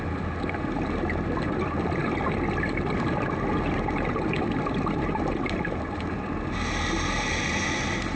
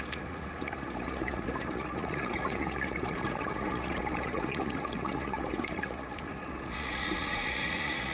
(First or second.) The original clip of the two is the first